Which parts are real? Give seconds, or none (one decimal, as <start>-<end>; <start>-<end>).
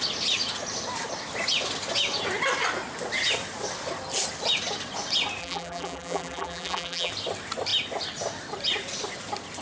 0.0-5.4; 7.1-9.6